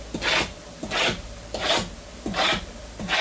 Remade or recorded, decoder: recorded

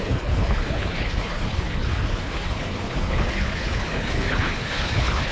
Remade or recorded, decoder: remade, codec, HILCodec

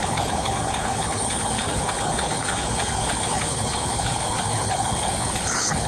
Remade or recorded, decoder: remade, codec, HILCodec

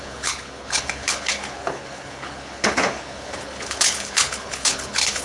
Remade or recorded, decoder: remade, codec, HILCodec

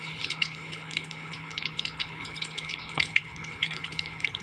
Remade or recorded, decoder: remade, codec, HILCodec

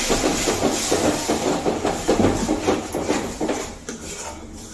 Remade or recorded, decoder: recorded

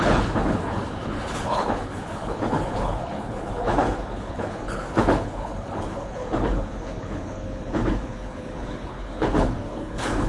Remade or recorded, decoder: remade, codec, HILCodec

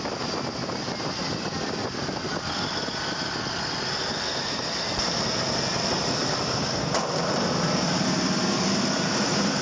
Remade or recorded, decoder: recorded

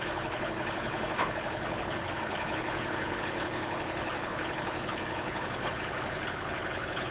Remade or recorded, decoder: remade, codec, HILCodec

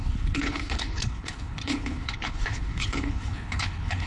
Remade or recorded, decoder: remade, codec, HILCodec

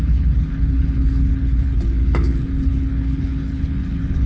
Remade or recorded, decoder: remade, codec, HILCodec